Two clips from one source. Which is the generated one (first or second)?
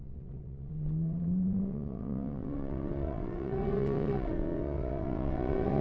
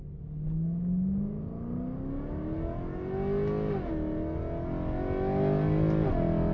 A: first